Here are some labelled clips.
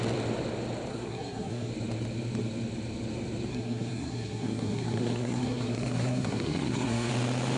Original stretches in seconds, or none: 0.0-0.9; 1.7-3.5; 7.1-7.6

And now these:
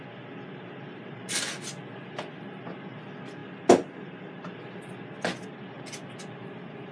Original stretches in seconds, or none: 0.0-6.9